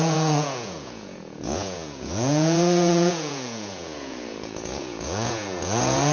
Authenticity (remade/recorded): remade